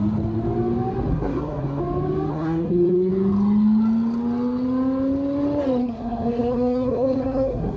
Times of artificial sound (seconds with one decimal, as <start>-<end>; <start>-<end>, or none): 1.1-1.8; 2.3-3.1; 5.8-7.8